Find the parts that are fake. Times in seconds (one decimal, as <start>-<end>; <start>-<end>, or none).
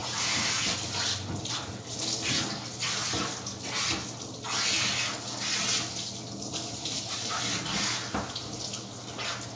6.5-7.4